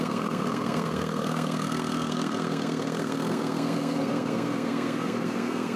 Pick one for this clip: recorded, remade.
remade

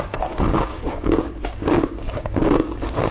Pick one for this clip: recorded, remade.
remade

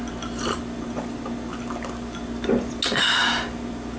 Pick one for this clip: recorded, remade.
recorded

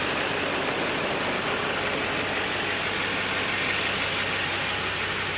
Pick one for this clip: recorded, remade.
recorded